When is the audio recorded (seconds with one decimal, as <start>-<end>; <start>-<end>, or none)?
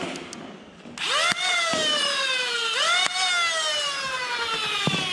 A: 0.0-1.7; 2.5-5.1